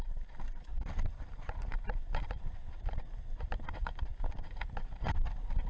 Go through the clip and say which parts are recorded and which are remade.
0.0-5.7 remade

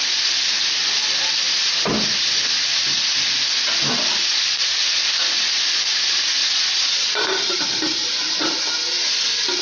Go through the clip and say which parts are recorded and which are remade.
0.0-6.4 recorded; 6.4-8.6 remade; 8.6-9.6 recorded

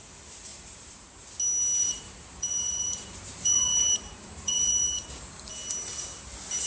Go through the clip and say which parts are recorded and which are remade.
0.0-0.5 recorded; 0.5-1.3 remade; 1.3-1.8 recorded; 1.8-5.5 remade; 5.5-6.7 recorded

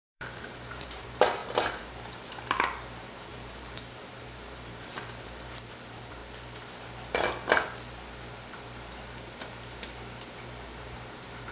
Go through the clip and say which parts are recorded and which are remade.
0.0-6.2 remade; 6.2-10.4 recorded; 10.4-11.5 remade